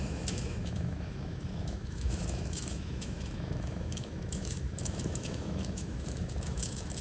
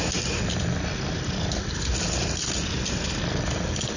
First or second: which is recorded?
second